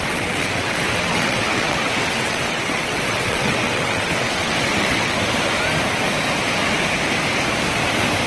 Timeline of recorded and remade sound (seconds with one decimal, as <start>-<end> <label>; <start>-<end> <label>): 0.0-5.1 remade; 5.1-8.3 recorded